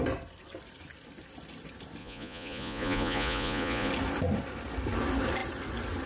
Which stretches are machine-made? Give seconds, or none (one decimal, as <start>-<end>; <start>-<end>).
2.0-3.9